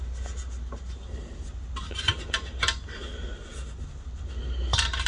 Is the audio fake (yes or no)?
no